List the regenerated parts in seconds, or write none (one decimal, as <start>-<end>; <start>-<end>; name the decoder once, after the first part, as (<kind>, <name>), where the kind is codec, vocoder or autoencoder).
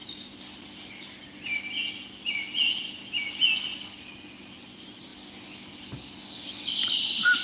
4.4-5.1 (vocoder, BigVGAN v2); 6.7-7.4